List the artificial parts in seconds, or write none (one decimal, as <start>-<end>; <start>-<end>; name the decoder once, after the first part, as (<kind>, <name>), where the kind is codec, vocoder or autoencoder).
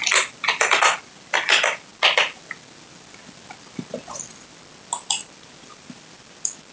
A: 0.0-1.9 (vocoder, BigVGAN v2); 5.1-6.7